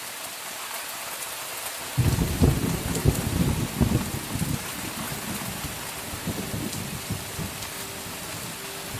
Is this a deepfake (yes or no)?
no